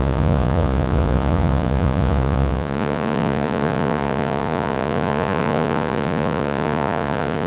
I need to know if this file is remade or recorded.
remade